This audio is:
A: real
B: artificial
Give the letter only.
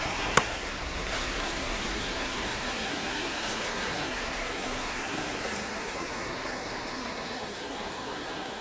B